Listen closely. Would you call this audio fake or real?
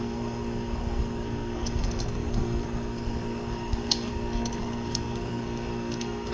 fake